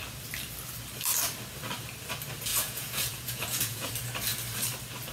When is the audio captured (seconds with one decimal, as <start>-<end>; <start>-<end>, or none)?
0.0-2.5; 3.9-5.1

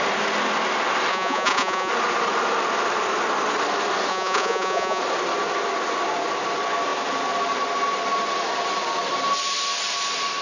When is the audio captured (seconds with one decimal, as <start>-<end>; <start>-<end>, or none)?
0.0-1.1; 1.9-4.1; 5.0-10.4